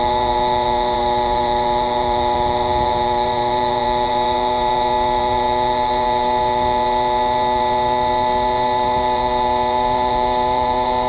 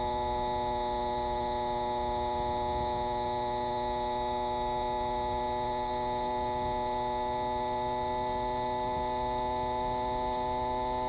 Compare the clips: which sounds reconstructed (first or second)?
first